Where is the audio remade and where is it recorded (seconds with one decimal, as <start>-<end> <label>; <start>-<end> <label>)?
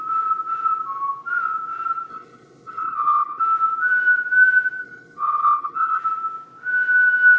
0.0-2.1 recorded; 2.1-3.4 remade; 3.4-4.8 recorded; 4.8-6.0 remade; 6.0-7.4 recorded